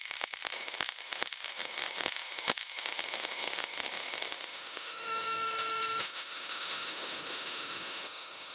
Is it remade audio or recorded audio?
remade